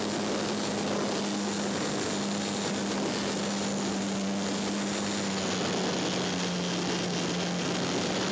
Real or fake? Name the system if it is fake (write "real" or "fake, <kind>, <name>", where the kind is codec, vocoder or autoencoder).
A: real